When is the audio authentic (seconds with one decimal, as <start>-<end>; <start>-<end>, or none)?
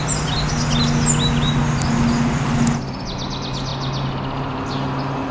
0.0-5.3